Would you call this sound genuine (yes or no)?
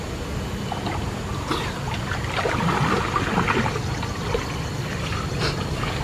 yes